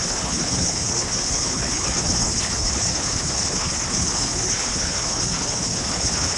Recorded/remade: remade